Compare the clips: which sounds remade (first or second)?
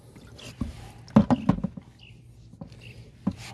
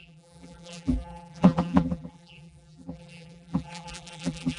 second